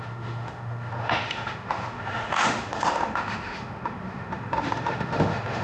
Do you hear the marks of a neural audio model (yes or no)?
yes